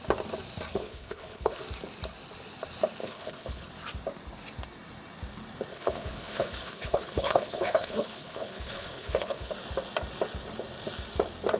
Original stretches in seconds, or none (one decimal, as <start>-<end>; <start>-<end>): 0.0-0.7; 1.6-3.0; 3.7-5.7; 9.5-11.6